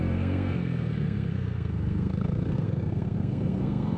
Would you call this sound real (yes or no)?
no